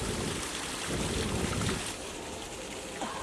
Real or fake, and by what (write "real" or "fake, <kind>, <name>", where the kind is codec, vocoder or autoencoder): real